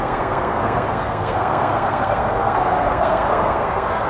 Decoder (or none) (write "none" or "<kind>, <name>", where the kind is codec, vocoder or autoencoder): codec, SNAC